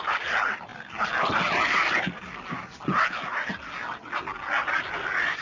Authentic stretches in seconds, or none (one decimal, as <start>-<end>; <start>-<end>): 0.0-5.4